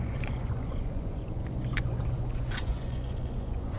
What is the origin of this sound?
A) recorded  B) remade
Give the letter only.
B